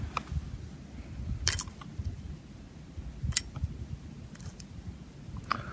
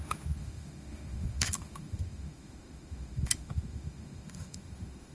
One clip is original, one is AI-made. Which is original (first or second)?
first